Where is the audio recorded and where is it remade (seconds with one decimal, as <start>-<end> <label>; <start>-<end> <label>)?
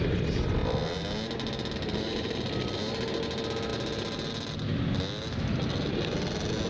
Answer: 0.0-6.7 recorded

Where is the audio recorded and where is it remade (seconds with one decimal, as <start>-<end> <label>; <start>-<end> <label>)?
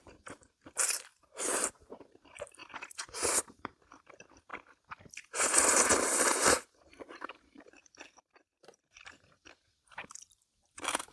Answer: 0.0-2.6 remade; 2.6-3.4 recorded; 3.4-4.5 remade; 4.5-6.9 recorded; 6.9-11.1 remade